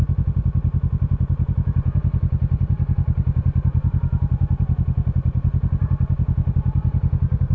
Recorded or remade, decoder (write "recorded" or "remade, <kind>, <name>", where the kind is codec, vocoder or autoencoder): remade, vocoder, BigVGAN v2